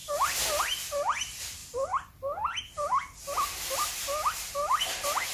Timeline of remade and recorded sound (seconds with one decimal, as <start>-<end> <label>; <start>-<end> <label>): 0.0-5.3 recorded